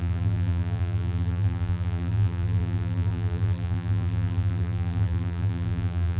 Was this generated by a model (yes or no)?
yes